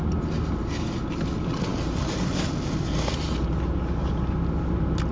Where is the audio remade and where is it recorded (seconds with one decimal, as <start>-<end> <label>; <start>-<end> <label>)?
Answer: 0.0-5.1 recorded